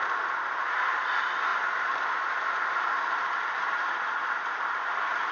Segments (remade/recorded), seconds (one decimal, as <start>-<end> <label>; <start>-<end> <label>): 0.0-5.3 recorded